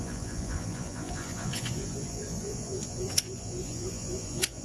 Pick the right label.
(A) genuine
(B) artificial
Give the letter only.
B